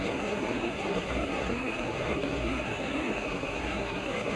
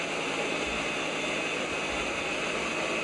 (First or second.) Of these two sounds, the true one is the second